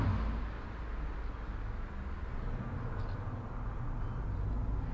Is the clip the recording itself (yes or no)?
yes